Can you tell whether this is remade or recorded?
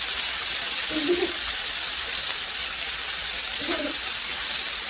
recorded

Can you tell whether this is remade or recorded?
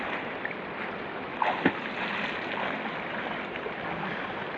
recorded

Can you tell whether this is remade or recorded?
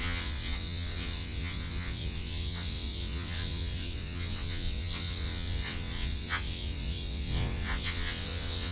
remade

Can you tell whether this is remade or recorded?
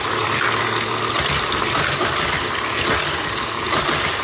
recorded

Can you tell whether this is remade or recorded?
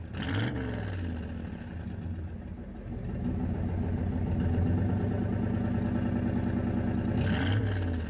recorded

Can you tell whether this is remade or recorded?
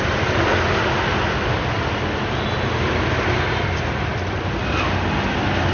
recorded